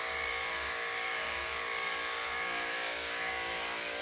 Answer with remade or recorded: remade